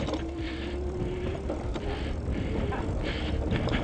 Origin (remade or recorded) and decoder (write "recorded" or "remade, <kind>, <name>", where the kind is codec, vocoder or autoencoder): recorded